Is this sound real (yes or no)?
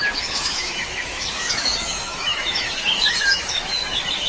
no